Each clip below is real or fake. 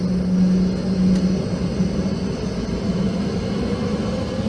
real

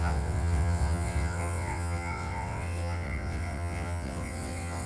fake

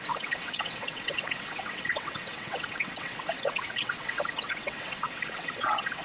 fake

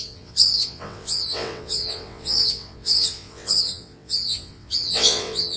fake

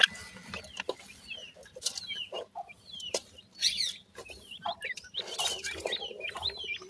real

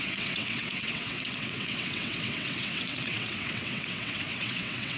fake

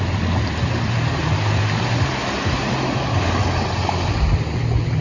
real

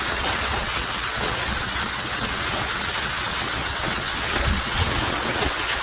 fake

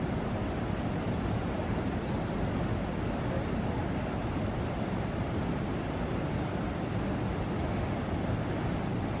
real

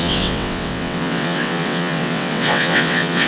fake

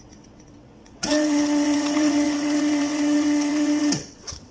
fake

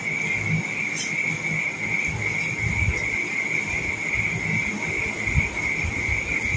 real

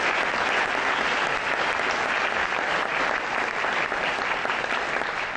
real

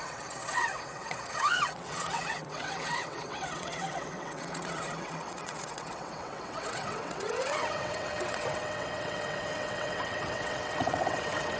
fake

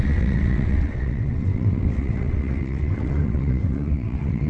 fake